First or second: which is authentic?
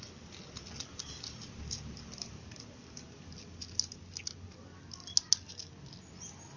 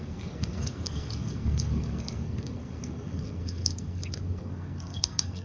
first